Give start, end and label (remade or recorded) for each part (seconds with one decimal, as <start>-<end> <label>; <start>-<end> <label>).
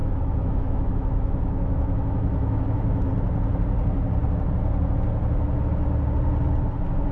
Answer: 0.0-3.1 remade; 3.1-7.1 recorded